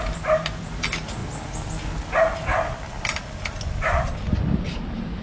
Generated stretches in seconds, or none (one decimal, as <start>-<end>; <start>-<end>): 0.0-1.2; 3.7-5.2